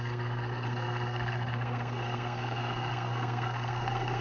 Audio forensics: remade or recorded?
remade